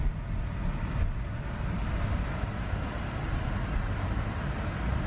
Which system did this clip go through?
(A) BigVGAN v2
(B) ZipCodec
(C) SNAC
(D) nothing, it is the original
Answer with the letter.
D